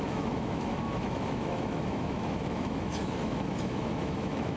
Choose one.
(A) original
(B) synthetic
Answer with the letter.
B